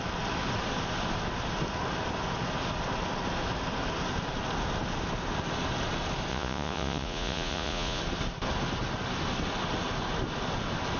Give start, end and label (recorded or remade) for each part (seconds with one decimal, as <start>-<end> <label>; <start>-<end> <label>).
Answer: 0.0-6.3 recorded; 6.3-8.0 remade; 8.0-11.0 recorded